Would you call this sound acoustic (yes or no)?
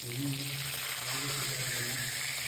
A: yes